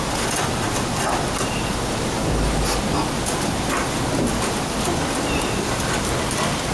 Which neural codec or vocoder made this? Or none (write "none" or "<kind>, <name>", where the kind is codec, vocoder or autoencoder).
none